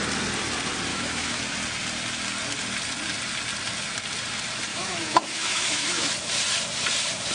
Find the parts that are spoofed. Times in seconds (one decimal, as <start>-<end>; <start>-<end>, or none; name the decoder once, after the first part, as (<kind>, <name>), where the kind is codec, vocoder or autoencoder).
0.9-1.4 (autoencoder, DAC-VAE); 4.7-6.1